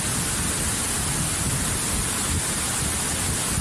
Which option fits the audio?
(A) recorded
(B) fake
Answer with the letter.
A